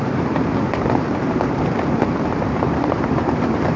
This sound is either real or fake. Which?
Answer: fake